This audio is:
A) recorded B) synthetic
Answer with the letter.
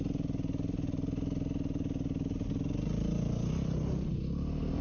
A